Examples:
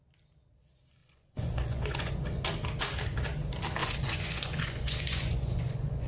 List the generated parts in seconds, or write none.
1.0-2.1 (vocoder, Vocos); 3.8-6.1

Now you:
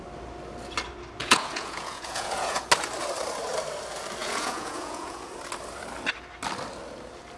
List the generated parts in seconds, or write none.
1.2-2.7 (vocoder, Vocos); 4.2-5.3

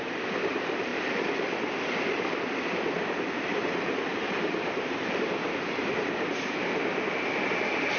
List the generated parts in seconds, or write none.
4.1-5.8 (vocoder, BigVGAN v2)

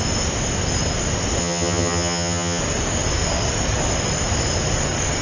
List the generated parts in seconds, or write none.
1.4-2.6 (vocoder, HiFi-GAN)

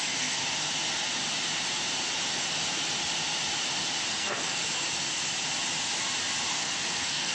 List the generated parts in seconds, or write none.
0.0-0.4 (codec, SNAC); 4.1-4.6; 6.5-7.3

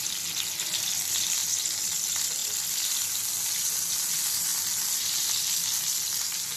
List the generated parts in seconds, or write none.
1.4-2.0 (vocoder, BigVGAN v2)